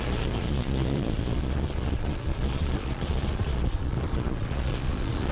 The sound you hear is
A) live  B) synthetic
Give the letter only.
B